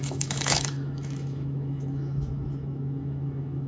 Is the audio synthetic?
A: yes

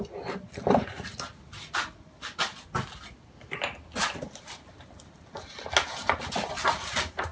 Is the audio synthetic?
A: no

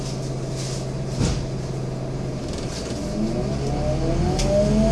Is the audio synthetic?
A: no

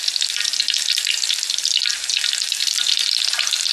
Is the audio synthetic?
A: no